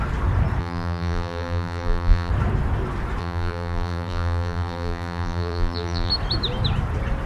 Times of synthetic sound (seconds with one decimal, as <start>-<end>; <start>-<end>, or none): 0.6-2.3; 3.2-6.1